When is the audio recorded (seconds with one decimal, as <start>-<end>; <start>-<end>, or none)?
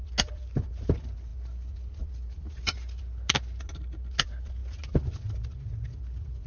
0.0-6.5